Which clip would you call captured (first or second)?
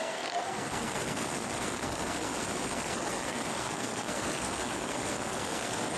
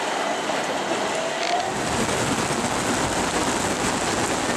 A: second